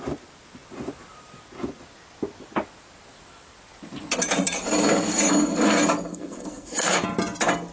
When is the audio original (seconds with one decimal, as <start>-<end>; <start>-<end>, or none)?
0.0-6.1; 7.0-7.7